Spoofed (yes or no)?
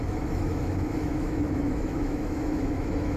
yes